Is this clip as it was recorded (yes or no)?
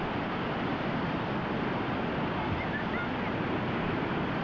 yes